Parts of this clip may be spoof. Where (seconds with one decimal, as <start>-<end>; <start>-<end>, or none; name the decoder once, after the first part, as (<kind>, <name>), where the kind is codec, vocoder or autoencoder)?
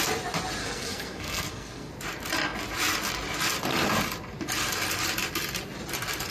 0.6-1.9 (codec, SNAC)